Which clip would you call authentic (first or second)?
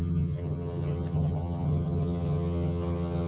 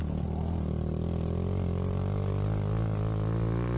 second